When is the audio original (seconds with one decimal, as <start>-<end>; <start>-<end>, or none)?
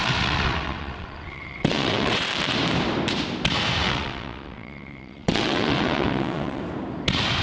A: 2.3-3.8; 6.6-7.4